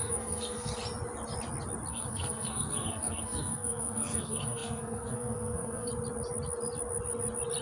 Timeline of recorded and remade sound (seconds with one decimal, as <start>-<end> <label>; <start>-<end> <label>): 0.0-0.7 remade; 0.7-1.9 recorded; 1.9-5.9 remade; 5.9-7.6 recorded